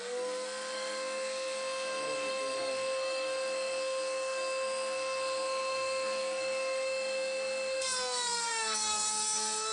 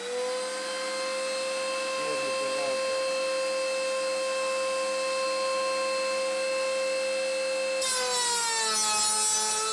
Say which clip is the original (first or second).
second